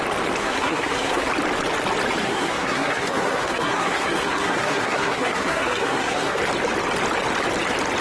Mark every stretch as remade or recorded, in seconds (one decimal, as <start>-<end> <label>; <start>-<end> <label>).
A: 0.0-0.4 recorded; 0.4-1.3 remade; 1.3-2.2 recorded; 2.2-6.4 remade; 6.4-8.0 recorded